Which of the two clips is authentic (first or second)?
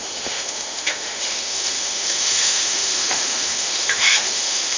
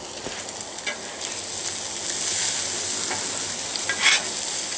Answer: second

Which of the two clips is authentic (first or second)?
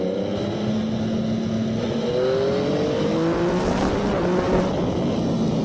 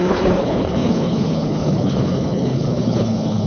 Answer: first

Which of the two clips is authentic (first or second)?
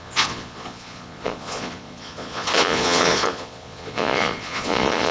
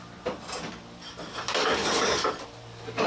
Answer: second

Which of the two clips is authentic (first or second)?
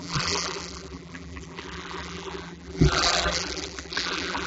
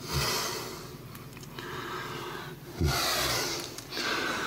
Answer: second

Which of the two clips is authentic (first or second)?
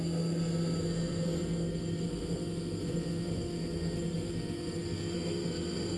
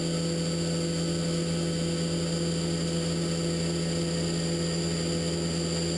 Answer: second